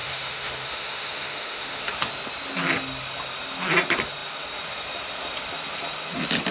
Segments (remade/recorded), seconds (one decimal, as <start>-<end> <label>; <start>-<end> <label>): 0.0-2.1 remade; 2.1-6.5 recorded